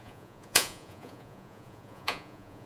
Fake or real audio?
fake